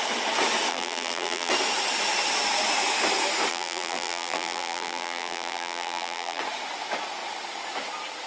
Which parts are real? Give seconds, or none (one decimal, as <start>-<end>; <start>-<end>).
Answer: 0.0-0.7; 1.5-3.5; 6.4-8.3